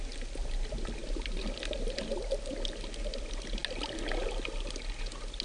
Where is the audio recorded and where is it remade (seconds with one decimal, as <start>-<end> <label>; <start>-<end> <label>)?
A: 0.0-5.4 recorded